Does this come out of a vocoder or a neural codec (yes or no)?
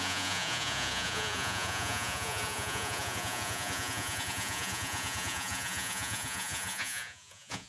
yes